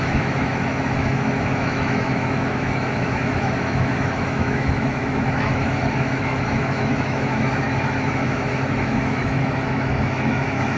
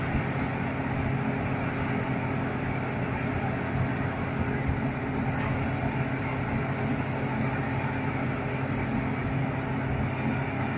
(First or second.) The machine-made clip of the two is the first